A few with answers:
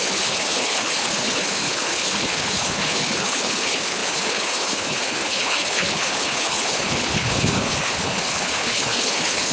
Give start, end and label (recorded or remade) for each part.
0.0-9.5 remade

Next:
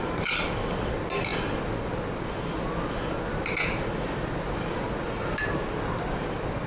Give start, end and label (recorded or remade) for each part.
0.0-6.7 recorded

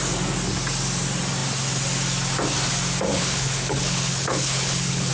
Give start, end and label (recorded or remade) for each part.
0.0-3.1 recorded; 3.1-5.1 remade

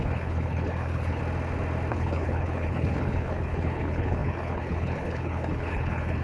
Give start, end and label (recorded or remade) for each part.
0.0-1.2 remade; 1.2-1.9 recorded; 1.9-6.2 remade

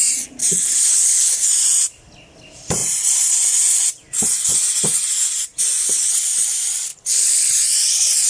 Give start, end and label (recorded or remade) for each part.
0.0-0.4 recorded; 0.4-1.4 remade; 1.4-6.9 recorded; 6.9-7.5 remade; 7.5-8.3 recorded

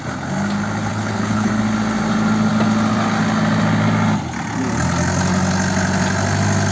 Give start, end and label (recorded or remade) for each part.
0.0-0.9 recorded; 0.9-1.5 remade; 1.5-6.7 recorded

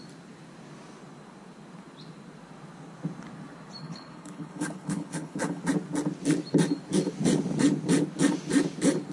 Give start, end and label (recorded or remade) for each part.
0.0-3.8 recorded; 3.8-5.6 remade; 5.6-9.1 recorded

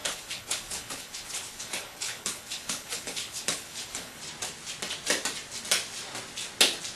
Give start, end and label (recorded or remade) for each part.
0.0-4.2 remade; 4.2-7.0 recorded